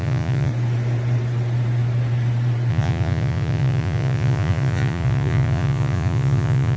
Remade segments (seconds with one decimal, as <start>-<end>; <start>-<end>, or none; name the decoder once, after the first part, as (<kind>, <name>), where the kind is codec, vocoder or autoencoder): 0.0-0.5 (vocoder, Vocos); 2.7-6.8